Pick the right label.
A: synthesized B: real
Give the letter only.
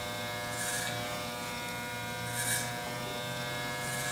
B